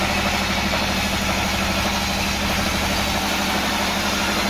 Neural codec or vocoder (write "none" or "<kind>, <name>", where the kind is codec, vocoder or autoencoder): none